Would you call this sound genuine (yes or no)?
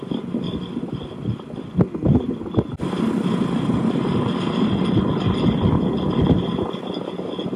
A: yes